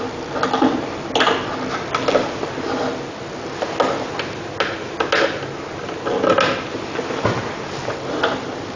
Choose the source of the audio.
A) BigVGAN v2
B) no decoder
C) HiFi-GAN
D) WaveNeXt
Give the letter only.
B